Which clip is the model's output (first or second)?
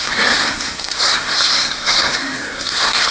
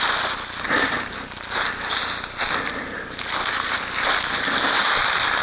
first